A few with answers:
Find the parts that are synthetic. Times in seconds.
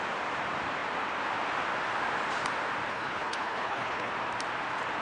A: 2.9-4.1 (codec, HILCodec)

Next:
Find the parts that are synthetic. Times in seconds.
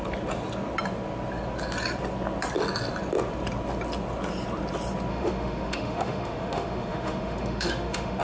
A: 5.1-8.2 (autoencoder, DAC-VAE)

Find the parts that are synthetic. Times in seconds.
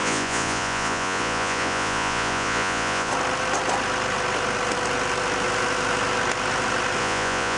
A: 0.0-3.1 (vocoder, Vocos); 7.0-7.6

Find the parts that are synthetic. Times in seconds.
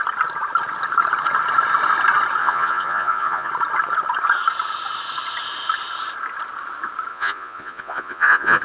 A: 2.4-3.5 (vocoder, Vocos); 7.1-8.6